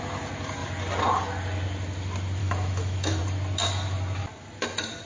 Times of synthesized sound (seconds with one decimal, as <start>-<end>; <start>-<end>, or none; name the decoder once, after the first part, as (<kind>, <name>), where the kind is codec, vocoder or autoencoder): 2.4-3.2 (autoencoder, DAC-VAE)